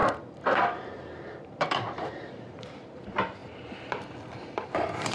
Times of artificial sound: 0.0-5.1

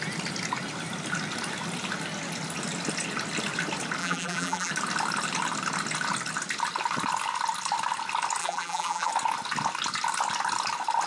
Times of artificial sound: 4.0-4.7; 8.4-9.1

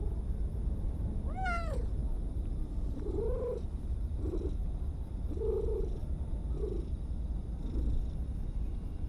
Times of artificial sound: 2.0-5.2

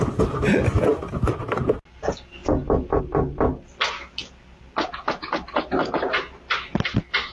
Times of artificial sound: none